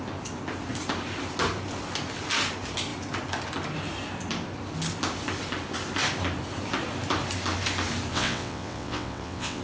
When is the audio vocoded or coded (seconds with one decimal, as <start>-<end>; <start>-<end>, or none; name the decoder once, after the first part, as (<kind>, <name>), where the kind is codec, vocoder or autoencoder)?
8.1-9.6 (vocoder, WaveNeXt)